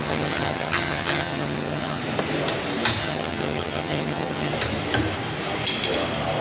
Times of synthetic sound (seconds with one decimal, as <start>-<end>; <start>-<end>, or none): 0.0-2.0; 3.0-4.5